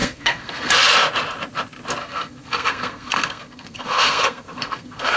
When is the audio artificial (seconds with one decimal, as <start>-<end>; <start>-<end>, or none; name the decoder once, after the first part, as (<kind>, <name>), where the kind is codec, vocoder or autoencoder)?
0.0-0.7 (codec, SNAC); 2.0-5.2